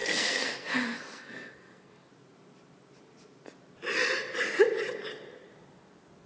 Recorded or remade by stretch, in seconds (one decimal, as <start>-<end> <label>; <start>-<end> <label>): 0.0-2.1 remade; 2.1-6.3 recorded